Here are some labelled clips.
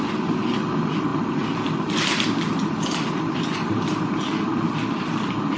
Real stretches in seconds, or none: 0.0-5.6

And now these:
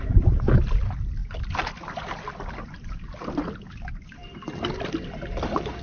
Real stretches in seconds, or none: 0.0-5.8

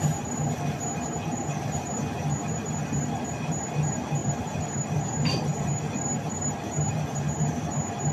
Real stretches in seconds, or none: 0.0-4.2; 6.0-8.1

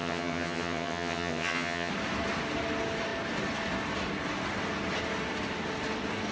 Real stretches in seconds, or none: 1.9-6.3